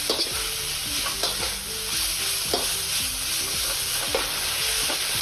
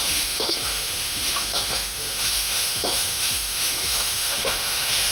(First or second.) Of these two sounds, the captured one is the first